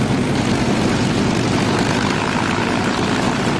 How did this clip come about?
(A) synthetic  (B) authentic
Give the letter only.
B